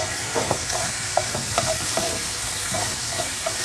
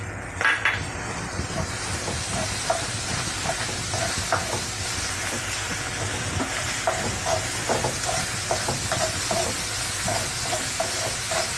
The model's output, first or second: first